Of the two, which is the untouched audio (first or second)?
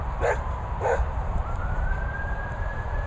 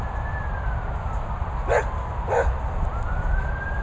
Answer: second